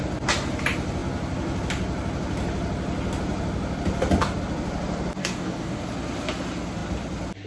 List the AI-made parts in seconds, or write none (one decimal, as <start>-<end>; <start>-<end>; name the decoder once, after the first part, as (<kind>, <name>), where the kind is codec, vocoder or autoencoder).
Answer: 5.2-5.8 (codec, DAC)